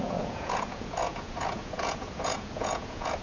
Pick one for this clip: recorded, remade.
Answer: remade